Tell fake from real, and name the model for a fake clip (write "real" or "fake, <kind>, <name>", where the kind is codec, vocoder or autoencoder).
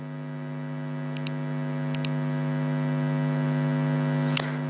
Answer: real